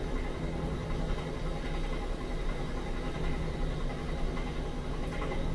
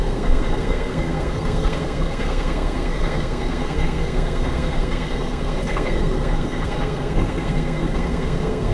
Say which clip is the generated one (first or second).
second